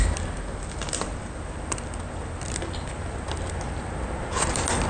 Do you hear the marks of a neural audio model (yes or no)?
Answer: no